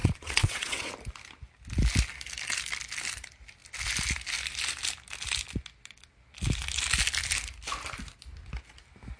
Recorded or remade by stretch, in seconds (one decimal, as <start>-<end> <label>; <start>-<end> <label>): 0.0-0.9 remade; 0.9-9.2 recorded